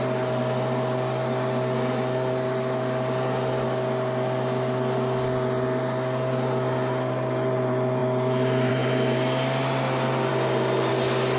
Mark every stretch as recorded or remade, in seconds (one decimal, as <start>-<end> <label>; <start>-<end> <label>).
0.0-11.4 recorded